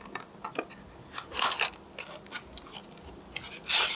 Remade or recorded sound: recorded